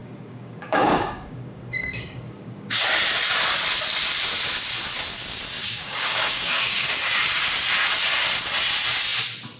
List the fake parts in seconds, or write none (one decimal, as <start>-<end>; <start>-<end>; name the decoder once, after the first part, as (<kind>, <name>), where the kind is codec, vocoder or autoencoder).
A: 0.0-2.8 (codec, DAC); 5.6-7.0